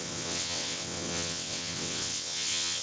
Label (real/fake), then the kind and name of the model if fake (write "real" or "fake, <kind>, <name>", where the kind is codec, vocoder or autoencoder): fake, vocoder, WaveNeXt